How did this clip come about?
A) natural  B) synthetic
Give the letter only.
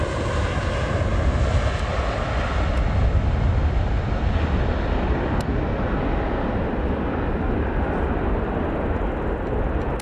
A